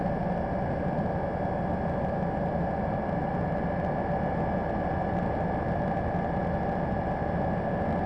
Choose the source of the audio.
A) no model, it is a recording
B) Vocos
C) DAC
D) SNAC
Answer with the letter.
A